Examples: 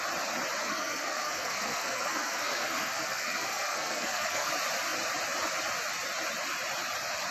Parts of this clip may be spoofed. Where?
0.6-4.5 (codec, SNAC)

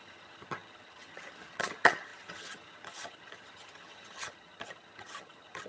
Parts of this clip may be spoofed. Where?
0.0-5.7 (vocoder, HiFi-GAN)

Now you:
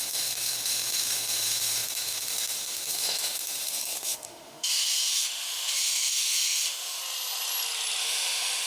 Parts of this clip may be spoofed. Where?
0.0-7.0 (autoencoder, DAC-VAE); 8.0-8.7

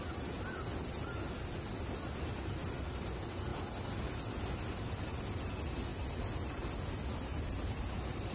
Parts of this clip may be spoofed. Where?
none